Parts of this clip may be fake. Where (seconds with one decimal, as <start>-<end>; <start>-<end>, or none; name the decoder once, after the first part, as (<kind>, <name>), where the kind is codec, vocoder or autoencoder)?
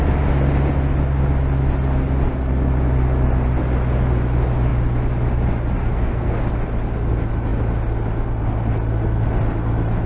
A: 5.8-6.4 (codec, SNAC)